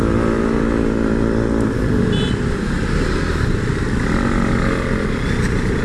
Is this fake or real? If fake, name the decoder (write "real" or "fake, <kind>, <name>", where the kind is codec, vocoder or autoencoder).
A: real